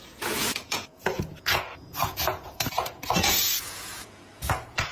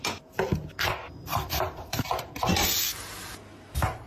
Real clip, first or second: second